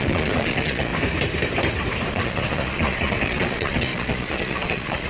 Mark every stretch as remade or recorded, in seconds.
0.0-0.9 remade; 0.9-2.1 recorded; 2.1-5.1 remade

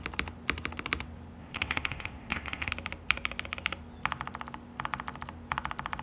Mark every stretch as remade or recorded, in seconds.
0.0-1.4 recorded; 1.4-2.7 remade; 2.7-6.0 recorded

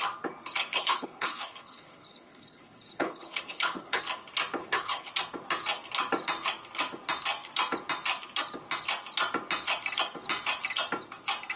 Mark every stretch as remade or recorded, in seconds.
0.0-0.7 recorded; 0.7-4.0 remade; 4.0-4.6 recorded; 4.6-5.1 remade; 5.1-11.6 recorded

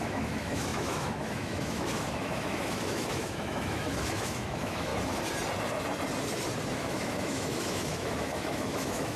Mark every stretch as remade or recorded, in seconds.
0.0-4.9 remade; 4.9-6.7 recorded; 6.7-9.2 remade